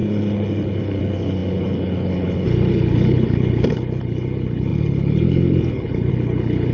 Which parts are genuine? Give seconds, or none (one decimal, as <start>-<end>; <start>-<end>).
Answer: none